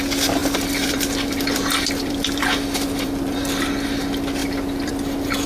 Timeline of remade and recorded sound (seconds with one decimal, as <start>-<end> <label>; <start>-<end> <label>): 0.0-0.4 recorded; 0.4-3.7 remade; 3.7-4.4 recorded; 4.4-4.9 remade; 4.9-5.5 recorded